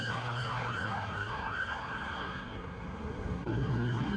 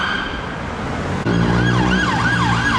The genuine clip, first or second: second